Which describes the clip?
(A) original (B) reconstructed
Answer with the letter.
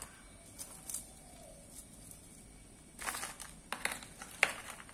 A